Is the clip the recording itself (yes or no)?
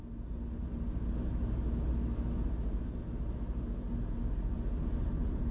yes